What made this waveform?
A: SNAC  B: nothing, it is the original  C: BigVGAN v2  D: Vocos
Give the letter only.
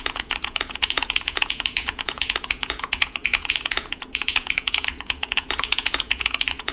D